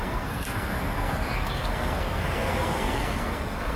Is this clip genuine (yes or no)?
no